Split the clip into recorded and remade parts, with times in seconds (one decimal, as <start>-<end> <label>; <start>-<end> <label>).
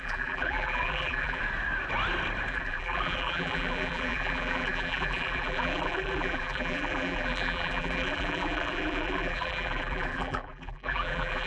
0.0-1.4 remade; 1.4-2.5 recorded; 2.5-11.5 remade